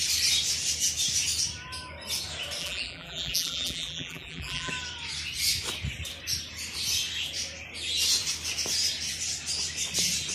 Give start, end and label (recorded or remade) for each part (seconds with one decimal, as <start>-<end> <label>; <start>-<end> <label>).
0.0-2.6 recorded; 2.6-4.7 remade; 4.7-10.3 recorded